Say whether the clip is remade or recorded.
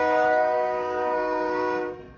remade